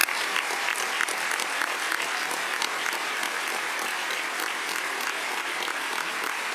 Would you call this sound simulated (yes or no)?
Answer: no